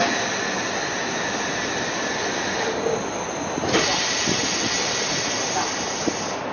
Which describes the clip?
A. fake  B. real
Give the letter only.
B